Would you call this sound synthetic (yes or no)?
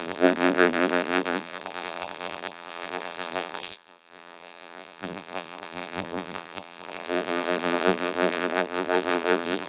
yes